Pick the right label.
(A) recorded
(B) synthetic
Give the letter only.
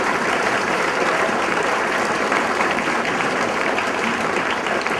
B